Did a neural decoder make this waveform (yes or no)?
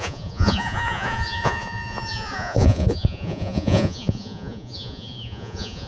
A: yes